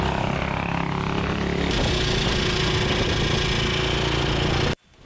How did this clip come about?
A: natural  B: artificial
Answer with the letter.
A